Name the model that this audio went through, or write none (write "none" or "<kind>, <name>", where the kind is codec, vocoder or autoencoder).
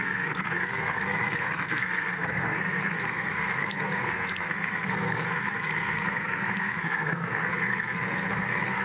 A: codec, SNAC